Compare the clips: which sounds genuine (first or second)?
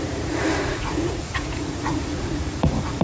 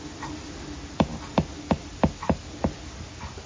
second